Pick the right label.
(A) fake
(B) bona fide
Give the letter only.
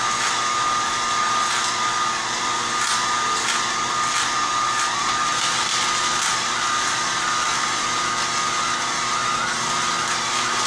B